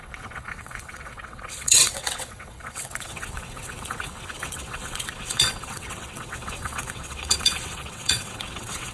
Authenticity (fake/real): fake